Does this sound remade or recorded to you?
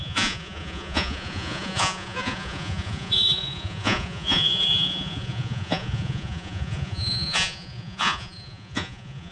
remade